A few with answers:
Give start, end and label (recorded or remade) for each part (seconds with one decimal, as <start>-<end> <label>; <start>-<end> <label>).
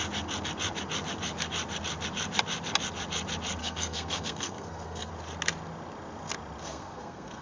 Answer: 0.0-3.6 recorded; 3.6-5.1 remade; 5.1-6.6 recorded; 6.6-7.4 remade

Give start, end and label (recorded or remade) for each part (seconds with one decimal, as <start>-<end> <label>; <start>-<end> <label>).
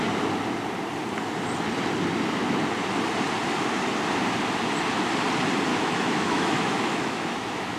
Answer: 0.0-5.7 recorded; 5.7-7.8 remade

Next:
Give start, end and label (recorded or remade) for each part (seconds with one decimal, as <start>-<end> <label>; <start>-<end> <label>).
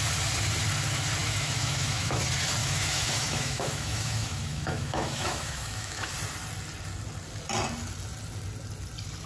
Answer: 0.0-1.2 recorded; 1.2-2.2 remade; 2.2-2.6 recorded; 2.6-6.1 remade; 6.1-9.3 recorded